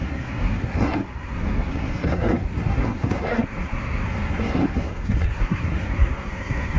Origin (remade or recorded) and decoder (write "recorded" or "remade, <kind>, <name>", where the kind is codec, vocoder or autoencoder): remade, codec, SNAC